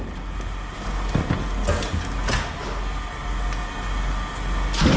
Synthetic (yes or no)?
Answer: no